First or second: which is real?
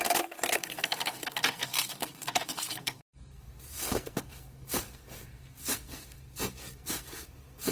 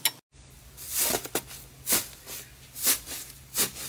second